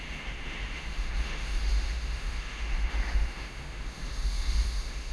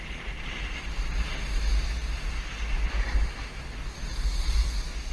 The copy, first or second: first